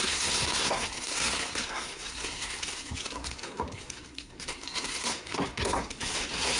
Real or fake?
fake